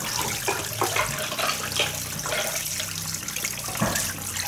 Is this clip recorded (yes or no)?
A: yes